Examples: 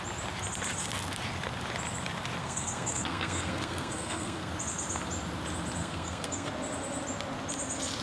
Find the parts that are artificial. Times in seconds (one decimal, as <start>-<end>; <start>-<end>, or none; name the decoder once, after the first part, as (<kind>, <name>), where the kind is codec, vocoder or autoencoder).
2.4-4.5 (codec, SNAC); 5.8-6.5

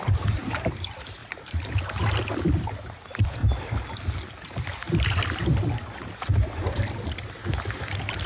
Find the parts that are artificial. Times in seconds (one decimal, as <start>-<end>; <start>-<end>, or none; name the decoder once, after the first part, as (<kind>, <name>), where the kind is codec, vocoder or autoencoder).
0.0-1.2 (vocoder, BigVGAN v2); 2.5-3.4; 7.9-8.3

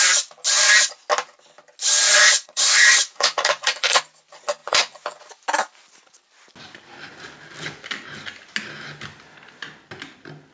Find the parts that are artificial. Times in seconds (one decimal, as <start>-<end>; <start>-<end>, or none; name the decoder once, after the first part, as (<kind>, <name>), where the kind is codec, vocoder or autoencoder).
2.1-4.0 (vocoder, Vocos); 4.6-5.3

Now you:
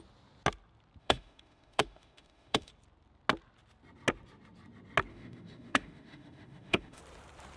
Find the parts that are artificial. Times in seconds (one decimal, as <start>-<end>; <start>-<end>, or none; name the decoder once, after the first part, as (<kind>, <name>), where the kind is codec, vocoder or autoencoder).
1.0-2.7 (autoencoder, DAC-VAE); 5.1-7.0

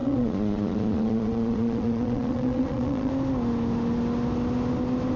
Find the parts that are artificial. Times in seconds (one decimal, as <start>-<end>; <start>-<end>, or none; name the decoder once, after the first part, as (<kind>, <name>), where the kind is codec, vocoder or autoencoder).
0.0-3.1 (vocoder, Vocos)

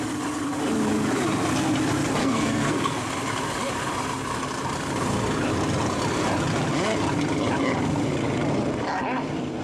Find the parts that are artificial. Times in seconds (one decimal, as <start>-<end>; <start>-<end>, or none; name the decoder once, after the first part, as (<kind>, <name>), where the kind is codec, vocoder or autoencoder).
2.2-3.0 (codec, SNAC)